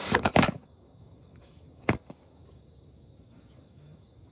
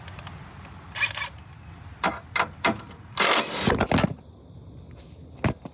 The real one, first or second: second